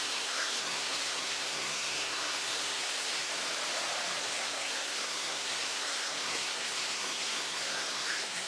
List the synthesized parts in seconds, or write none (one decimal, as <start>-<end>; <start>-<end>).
0.0-3.3; 4.2-8.5